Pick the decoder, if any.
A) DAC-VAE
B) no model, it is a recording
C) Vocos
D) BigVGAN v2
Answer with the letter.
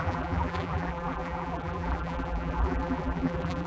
D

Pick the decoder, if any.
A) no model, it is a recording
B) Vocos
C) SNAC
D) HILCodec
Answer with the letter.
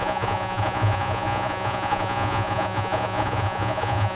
B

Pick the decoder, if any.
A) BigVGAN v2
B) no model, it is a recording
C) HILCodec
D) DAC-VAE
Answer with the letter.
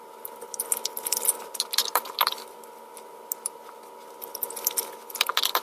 B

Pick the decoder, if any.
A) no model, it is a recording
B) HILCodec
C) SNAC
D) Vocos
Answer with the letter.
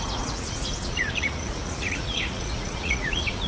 D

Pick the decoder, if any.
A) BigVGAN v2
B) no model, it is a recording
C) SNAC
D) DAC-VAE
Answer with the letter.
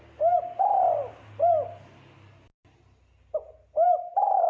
B